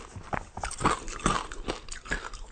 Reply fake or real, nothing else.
real